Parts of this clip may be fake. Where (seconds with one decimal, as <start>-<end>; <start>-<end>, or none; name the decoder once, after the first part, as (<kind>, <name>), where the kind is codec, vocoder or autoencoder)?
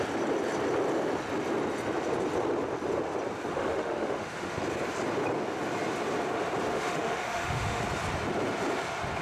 3.5-4.6 (autoencoder, DAC-VAE); 6.7-7.8